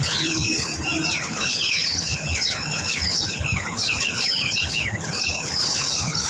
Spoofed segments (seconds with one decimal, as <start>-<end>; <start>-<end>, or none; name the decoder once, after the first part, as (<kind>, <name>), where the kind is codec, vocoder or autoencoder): 0.0-0.7 (codec, HILCodec); 1.2-6.3